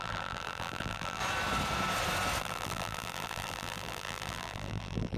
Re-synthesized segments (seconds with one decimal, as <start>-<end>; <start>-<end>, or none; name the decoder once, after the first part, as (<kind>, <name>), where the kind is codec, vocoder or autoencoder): 0.0-1.2 (vocoder, BigVGAN v2); 2.4-5.2